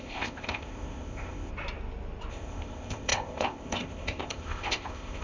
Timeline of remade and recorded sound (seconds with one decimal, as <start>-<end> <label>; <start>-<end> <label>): 0.0-1.5 remade; 1.5-2.3 recorded; 2.3-5.2 remade